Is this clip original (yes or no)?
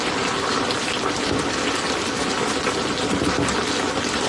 yes